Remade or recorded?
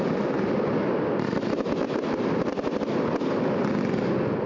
recorded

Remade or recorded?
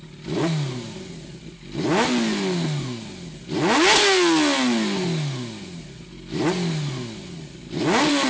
recorded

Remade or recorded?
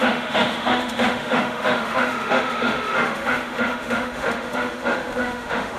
remade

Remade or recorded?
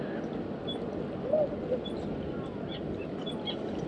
recorded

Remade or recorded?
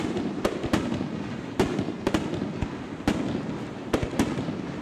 recorded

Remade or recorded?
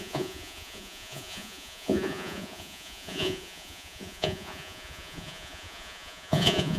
remade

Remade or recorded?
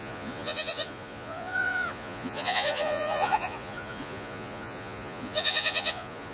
remade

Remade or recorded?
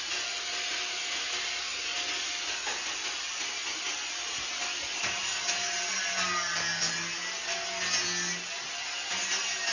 recorded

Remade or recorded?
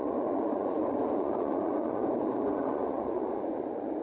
remade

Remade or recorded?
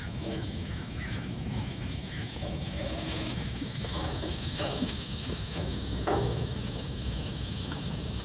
remade